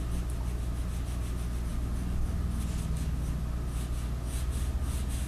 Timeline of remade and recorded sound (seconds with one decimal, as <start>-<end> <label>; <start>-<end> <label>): 0.0-5.3 recorded